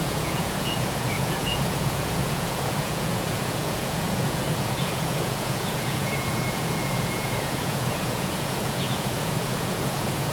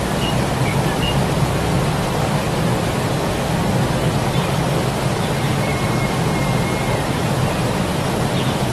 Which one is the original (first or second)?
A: second